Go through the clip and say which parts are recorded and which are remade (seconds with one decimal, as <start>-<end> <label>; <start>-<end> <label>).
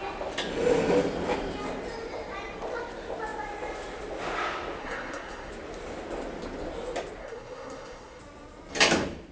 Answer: 0.0-4.8 recorded; 4.8-5.5 remade; 5.5-7.2 recorded; 7.2-8.2 remade; 8.2-9.3 recorded